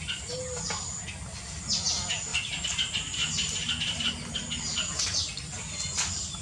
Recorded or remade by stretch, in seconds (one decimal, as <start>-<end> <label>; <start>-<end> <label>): 0.0-2.3 recorded; 2.3-4.1 remade; 4.1-6.4 recorded